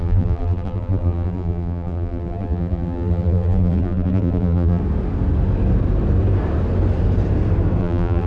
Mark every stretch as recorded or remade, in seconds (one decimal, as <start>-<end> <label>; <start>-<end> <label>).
0.0-4.8 remade; 4.8-7.8 recorded; 7.8-8.3 remade